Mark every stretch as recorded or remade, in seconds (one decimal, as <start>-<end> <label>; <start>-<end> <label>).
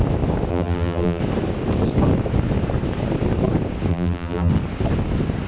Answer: 0.0-0.5 recorded; 0.5-1.2 remade; 1.2-3.9 recorded; 3.9-4.5 remade; 4.5-5.5 recorded